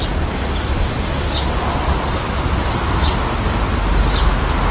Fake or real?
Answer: real